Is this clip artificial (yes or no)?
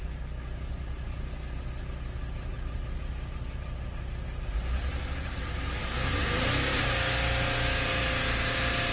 no